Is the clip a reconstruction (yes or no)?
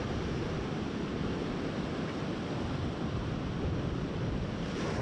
no